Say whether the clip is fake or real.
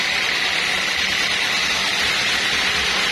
real